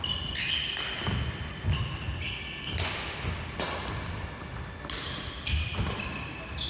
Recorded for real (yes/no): yes